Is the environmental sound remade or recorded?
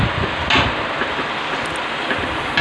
recorded